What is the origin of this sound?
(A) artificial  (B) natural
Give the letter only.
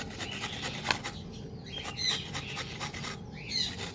B